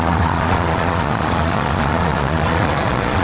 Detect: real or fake fake